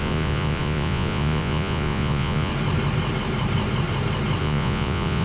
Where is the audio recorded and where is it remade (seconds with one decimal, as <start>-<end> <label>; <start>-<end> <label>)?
0.0-2.5 remade; 2.5-4.4 recorded; 4.4-5.2 remade